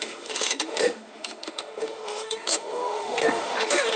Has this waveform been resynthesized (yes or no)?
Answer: yes